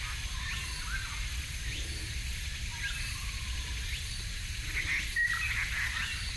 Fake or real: real